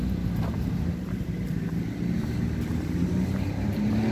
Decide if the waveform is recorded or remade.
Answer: recorded